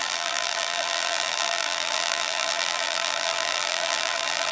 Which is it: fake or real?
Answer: fake